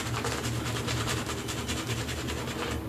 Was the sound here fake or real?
real